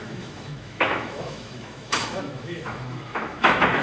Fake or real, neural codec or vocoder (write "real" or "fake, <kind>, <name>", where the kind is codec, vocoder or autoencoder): fake, autoencoder, DAC-VAE